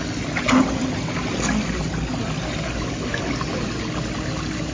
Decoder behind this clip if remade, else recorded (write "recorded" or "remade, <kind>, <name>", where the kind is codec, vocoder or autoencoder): recorded